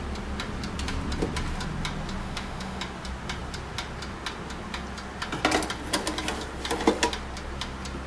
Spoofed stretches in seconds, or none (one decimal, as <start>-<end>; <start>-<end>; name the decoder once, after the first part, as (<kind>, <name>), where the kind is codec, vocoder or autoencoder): 2.2-2.8 (autoencoder, DAC-VAE)